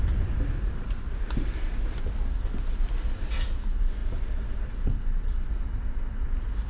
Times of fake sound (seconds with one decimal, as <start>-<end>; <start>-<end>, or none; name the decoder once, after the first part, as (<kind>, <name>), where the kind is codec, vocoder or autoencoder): none